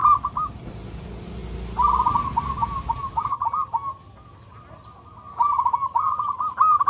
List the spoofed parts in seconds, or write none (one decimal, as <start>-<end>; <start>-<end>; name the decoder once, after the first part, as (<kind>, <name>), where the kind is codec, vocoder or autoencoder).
none